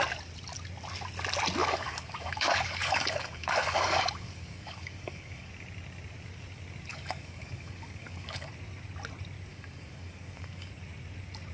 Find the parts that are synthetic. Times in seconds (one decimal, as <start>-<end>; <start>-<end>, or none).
1.6-5.5; 6.9-8.5; 9.5-10.7

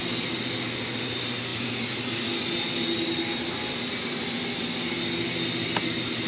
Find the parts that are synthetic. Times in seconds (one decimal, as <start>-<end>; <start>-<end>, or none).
none

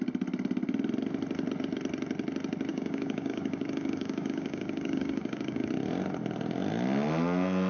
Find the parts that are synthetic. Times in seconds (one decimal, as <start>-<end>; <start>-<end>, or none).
2.7-5.7